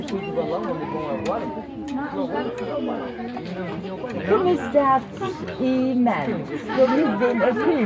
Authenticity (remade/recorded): recorded